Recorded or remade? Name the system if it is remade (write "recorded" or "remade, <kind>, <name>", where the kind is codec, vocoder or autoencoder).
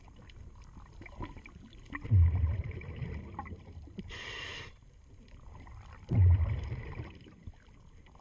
remade, vocoder, BigVGAN v2